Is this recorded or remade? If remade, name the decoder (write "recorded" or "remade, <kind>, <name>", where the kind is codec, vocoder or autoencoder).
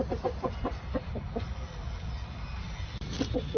recorded